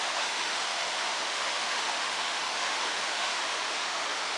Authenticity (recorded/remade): remade